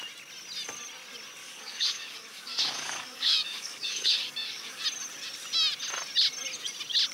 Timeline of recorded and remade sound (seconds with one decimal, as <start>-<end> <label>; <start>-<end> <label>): 0.0-1.4 recorded; 1.4-4.8 remade; 4.8-7.1 recorded